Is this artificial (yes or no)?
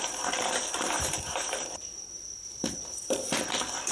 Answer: yes